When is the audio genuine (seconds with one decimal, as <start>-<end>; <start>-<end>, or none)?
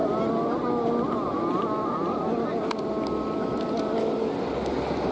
0.0-5.1